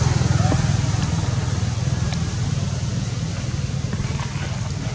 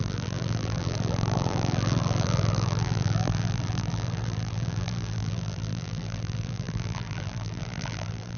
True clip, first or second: first